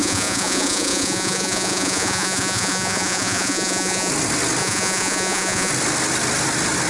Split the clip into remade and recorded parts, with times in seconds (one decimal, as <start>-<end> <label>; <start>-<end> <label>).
0.0-4.1 remade; 4.1-4.6 recorded; 4.6-5.7 remade; 5.7-6.9 recorded